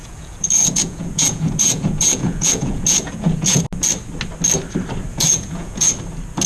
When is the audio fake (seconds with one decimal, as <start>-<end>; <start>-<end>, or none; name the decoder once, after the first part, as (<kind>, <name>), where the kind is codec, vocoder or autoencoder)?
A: 0.0-3.6 (vocoder, Vocos); 5.1-5.9